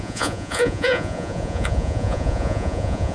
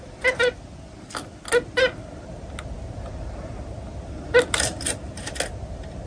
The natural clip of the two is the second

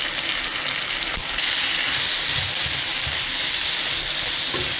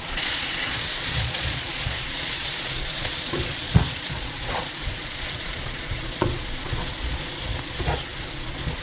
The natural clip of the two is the first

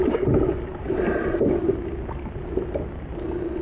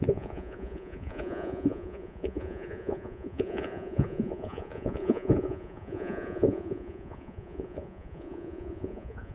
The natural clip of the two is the first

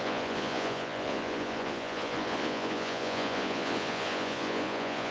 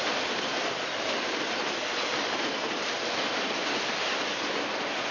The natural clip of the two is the second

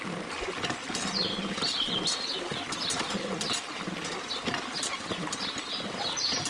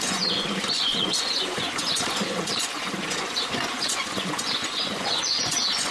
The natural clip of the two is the first